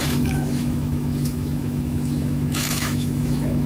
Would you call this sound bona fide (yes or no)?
no